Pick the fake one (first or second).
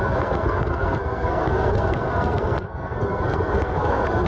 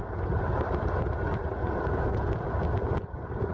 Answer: first